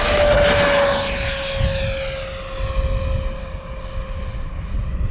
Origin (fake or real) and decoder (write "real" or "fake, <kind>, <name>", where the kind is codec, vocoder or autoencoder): real